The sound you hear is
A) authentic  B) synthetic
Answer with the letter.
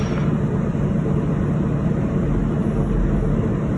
A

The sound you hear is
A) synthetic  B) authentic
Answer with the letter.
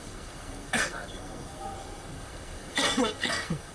A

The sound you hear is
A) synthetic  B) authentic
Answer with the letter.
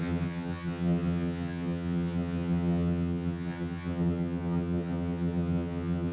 A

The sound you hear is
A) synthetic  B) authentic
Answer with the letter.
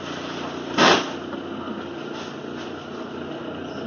B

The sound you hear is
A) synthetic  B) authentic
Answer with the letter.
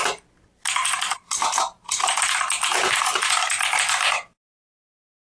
B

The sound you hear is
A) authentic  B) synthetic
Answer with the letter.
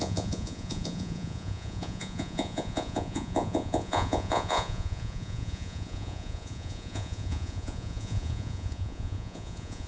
B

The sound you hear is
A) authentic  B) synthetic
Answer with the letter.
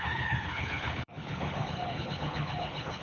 B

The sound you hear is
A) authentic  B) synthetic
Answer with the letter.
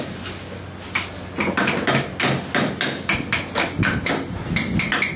A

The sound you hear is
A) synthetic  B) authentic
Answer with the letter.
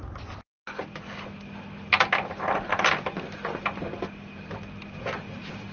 B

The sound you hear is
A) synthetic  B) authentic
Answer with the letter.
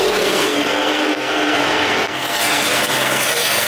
A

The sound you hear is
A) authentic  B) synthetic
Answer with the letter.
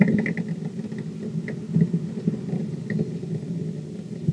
A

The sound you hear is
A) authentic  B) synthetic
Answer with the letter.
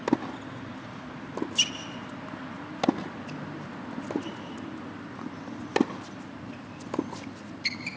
A